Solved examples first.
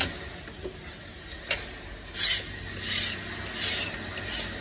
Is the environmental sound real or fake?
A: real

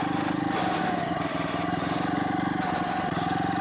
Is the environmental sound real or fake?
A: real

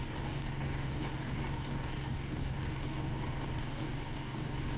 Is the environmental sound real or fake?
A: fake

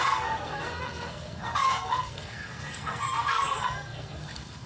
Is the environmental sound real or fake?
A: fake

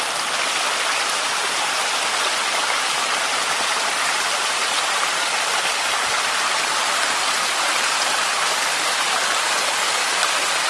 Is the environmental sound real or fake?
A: real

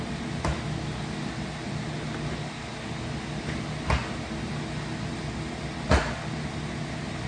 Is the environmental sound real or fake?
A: real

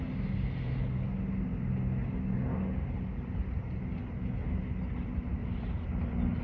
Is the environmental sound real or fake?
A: real